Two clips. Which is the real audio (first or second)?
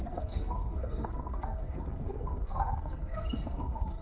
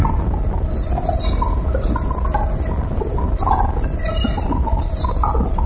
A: second